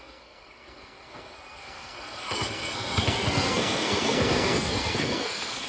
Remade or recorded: remade